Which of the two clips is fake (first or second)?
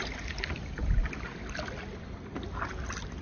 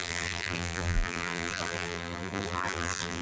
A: second